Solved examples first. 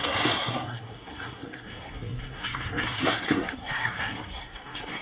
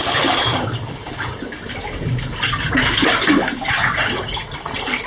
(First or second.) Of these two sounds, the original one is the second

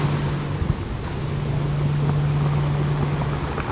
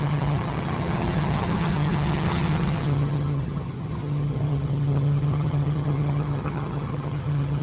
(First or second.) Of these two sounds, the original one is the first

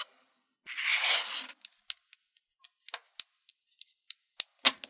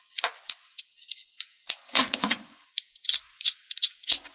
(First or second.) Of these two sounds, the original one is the first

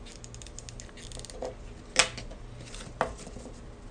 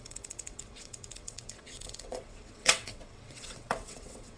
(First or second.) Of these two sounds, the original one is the first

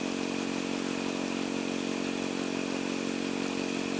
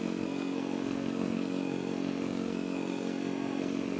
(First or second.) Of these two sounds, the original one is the first